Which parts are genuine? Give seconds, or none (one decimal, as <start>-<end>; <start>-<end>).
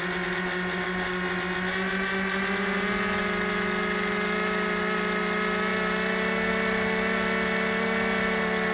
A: 0.0-8.7